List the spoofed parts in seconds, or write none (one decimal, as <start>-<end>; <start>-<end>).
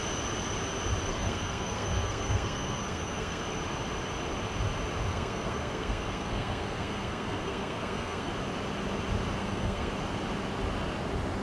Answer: 1.1-3.4; 5.1-8.3; 9.4-9.9